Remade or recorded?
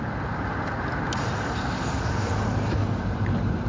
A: recorded